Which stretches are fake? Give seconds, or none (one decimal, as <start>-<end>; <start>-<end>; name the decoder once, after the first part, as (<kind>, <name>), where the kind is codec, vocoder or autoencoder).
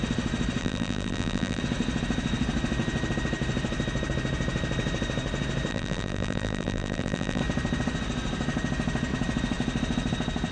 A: 0.6-1.6 (vocoder, BigVGAN v2); 5.7-7.4